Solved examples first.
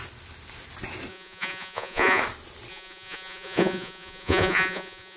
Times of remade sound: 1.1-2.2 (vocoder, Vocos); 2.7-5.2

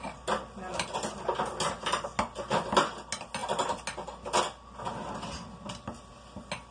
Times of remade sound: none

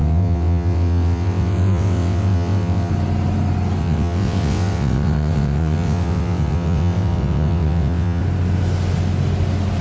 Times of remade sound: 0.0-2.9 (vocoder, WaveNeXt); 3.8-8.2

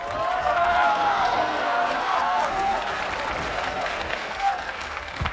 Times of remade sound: 0.4-3.0 (codec, SNAC); 3.5-5.3

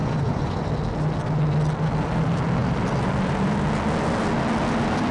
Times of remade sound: 0.0-0.7 (vocoder, Vocos)

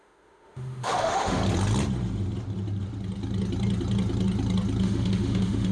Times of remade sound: 0.0-1.4 (autoencoder, DAC-VAE); 4.8-5.7

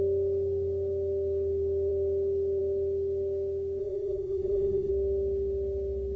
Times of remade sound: 3.8-4.9 (codec, SNAC)

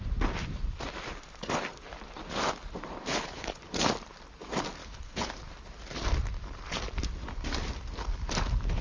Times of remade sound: 3.1-3.6 (codec, HILCodec); 4.8-5.3